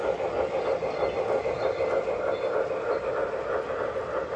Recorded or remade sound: recorded